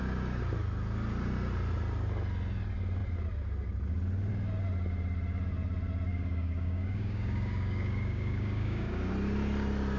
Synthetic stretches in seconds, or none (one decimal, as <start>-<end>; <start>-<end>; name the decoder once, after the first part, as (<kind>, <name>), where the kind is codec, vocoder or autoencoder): 6.1-9.1 (codec, DAC)